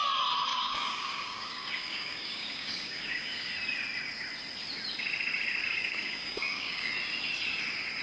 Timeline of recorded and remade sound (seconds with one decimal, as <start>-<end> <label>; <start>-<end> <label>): 0.0-0.5 recorded; 0.5-3.5 remade; 3.5-5.6 recorded; 5.6-6.9 remade; 6.9-8.0 recorded